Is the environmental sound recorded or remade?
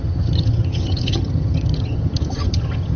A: remade